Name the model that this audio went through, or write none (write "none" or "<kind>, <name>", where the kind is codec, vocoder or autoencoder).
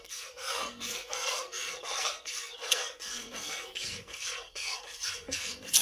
codec, SNAC